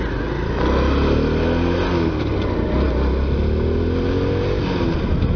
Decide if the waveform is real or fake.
real